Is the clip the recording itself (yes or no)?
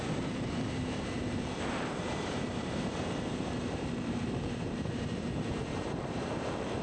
no